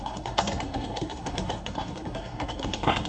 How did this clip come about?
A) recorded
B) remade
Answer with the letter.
B